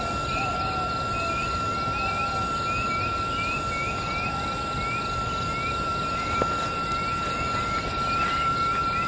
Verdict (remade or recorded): recorded